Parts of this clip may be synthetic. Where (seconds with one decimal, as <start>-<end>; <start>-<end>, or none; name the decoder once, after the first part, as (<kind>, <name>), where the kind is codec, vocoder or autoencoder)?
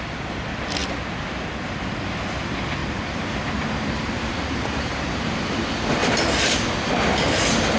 2.8-5.6 (vocoder, BigVGAN v2)